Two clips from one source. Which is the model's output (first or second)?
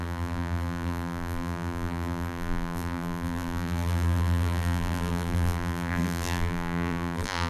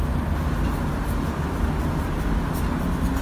first